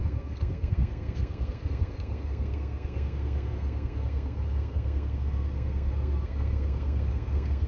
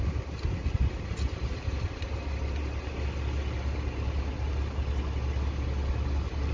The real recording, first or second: second